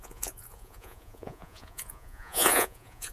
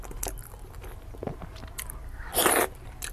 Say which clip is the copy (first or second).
first